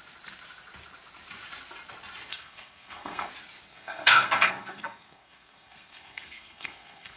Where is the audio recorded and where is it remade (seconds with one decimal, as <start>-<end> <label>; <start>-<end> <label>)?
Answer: 0.0-2.3 recorded; 2.3-3.3 remade; 3.3-3.7 recorded; 3.7-7.2 remade